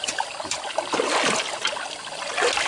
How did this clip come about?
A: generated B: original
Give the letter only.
B